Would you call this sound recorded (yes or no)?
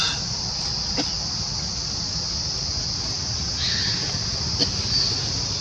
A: yes